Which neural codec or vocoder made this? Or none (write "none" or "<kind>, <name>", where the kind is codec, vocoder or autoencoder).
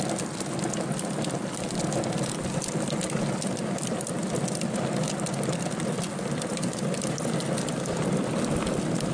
none